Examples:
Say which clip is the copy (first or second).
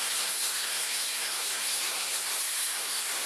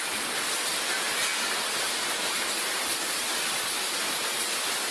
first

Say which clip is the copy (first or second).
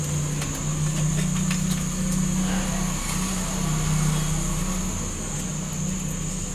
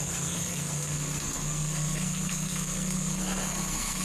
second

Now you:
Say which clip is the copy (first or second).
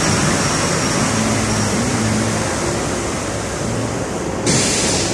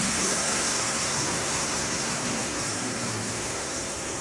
second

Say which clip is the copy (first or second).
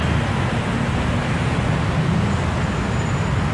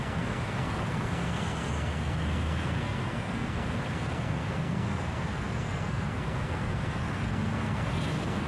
second